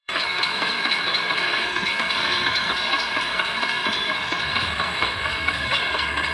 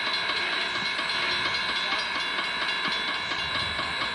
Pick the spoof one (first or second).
first